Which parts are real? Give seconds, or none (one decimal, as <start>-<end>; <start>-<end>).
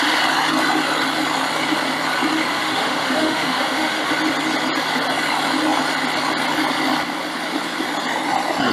0.0-2.5; 4.1-8.7